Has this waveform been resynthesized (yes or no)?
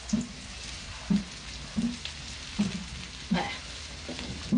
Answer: no